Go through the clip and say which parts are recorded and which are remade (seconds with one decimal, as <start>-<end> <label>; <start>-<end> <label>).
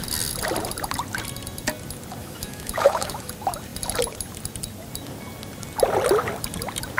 0.0-2.2 recorded; 2.2-3.3 remade; 3.3-7.0 recorded